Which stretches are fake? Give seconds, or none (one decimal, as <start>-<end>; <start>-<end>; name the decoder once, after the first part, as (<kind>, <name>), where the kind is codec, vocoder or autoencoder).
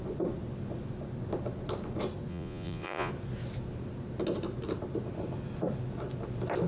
2.3-3.1 (vocoder, Vocos)